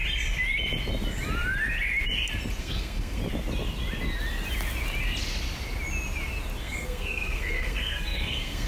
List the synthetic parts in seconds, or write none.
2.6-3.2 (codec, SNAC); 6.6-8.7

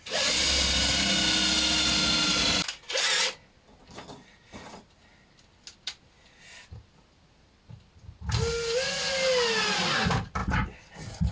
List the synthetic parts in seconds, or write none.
10.4-10.9 (vocoder, BigVGAN v2)